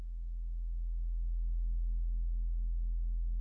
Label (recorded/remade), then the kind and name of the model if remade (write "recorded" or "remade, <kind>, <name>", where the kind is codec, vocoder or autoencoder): recorded